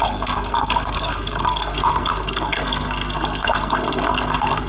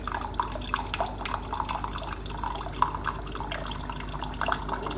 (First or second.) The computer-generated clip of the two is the first